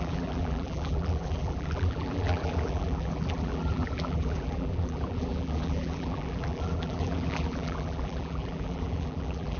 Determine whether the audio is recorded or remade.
remade